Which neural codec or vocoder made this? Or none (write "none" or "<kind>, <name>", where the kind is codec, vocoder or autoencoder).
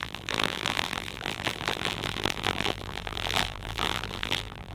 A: vocoder, BigVGAN v2